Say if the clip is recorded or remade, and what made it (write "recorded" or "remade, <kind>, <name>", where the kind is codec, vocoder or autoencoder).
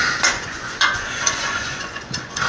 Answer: remade, vocoder, Vocos